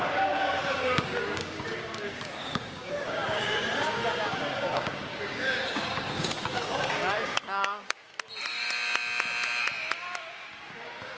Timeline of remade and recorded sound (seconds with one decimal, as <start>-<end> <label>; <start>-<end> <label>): 0.0-8.1 remade; 8.1-10.2 recorded; 10.2-11.2 remade